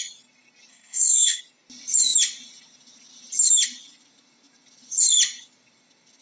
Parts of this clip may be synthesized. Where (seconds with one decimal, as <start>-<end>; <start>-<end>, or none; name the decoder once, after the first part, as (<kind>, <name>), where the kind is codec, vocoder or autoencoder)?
0.7-1.4 (codec, SNAC)